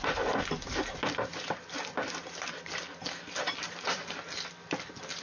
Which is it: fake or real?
real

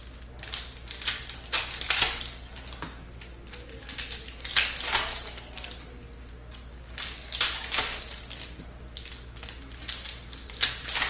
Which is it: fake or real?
real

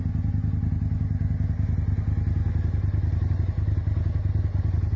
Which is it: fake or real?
real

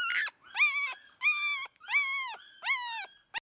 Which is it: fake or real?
real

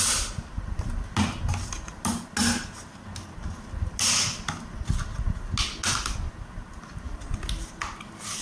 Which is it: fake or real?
real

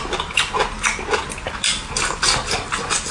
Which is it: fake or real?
real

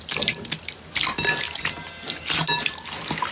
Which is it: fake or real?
real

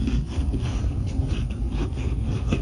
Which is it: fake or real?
fake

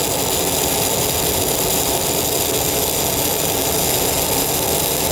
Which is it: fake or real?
real